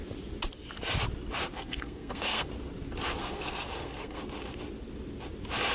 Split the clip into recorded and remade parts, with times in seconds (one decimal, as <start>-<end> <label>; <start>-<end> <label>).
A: 0.0-1.5 recorded; 1.5-2.5 remade; 2.5-3.2 recorded; 3.2-4.2 remade; 4.2-5.7 recorded

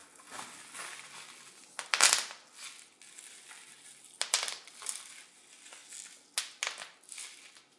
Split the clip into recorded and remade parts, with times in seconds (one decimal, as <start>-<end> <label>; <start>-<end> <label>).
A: 0.0-7.8 recorded

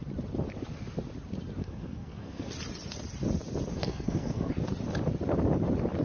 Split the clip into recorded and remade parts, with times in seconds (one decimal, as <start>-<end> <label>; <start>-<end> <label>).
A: 0.0-1.6 recorded; 1.6-2.5 remade; 2.5-3.7 recorded; 3.7-4.5 remade; 4.5-6.0 recorded

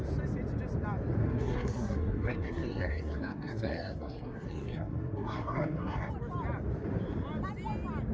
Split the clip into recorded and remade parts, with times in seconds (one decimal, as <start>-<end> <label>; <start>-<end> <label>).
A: 0.0-1.2 recorded; 1.2-6.1 remade; 6.1-8.1 recorded

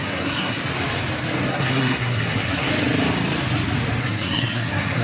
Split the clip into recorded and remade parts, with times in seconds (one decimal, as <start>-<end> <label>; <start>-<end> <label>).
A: 0.0-0.6 remade; 0.6-1.5 recorded; 1.5-2.7 remade; 2.7-4.0 recorded; 4.0-5.0 remade

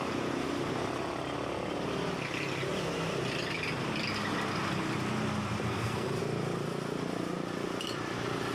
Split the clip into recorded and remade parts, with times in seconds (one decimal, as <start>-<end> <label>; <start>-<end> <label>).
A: 0.0-5.7 recorded; 5.7-6.2 remade; 6.2-8.5 recorded

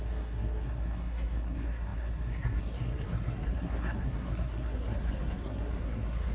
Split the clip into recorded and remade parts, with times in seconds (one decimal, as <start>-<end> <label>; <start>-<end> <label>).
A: 0.0-6.3 remade

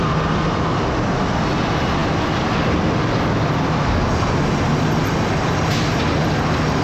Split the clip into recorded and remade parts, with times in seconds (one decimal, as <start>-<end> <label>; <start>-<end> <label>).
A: 0.0-6.8 recorded